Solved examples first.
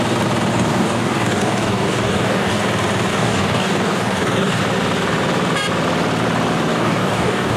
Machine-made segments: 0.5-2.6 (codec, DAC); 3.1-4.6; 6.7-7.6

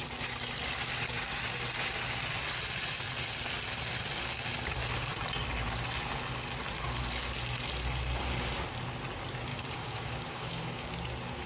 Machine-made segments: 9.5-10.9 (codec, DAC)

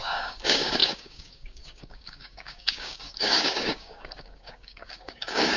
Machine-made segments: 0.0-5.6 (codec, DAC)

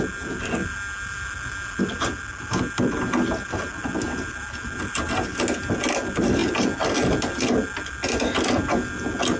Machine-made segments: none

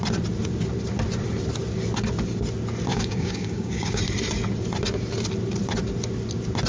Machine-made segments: 2.9-4.0 (codec, DAC)